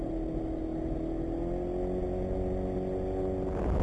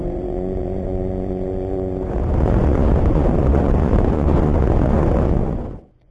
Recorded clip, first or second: first